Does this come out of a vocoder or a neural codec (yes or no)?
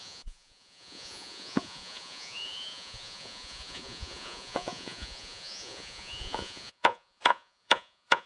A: yes